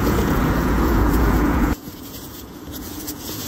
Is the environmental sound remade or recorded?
remade